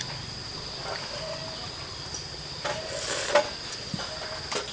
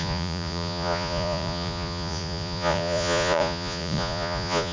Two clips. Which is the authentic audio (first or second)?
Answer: first